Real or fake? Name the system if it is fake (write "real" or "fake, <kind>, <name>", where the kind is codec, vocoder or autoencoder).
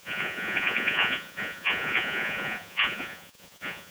fake, vocoder, Vocos